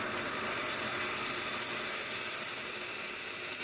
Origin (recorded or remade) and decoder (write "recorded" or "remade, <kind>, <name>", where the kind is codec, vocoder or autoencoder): recorded